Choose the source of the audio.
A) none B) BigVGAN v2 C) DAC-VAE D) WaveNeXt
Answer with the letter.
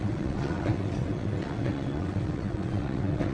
D